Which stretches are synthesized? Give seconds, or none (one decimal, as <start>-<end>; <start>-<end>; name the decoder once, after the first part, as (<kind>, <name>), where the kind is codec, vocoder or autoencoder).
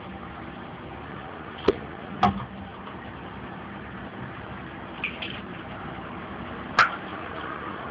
1.0-2.2 (vocoder, Vocos); 7.1-7.9